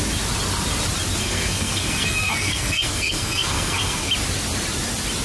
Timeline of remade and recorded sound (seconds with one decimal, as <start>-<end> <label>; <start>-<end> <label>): 0.0-1.2 recorded; 1.2-4.1 remade; 4.1-5.2 recorded